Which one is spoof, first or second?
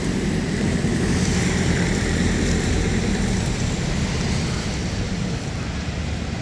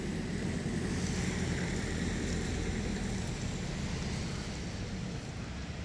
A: first